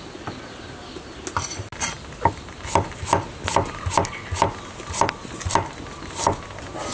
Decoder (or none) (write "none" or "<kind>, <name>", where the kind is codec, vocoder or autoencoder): none